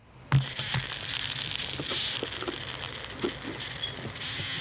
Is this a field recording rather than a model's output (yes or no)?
yes